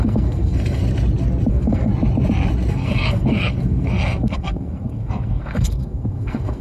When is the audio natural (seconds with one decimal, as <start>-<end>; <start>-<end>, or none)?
0.8-1.5; 1.9-2.7